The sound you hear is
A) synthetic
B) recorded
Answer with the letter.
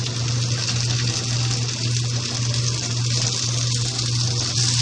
B